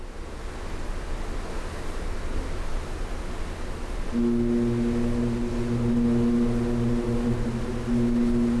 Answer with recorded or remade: recorded